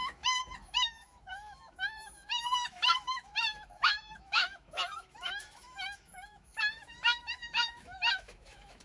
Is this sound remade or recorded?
remade